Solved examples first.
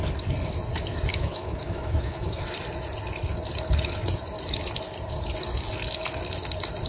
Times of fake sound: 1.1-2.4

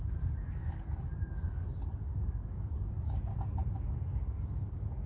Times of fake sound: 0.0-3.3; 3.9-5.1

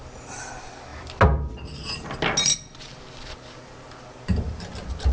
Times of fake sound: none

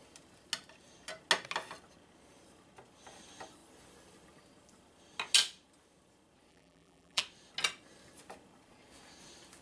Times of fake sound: 6.5-7.2

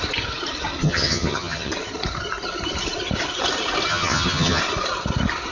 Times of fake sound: 0.8-1.7; 3.9-4.6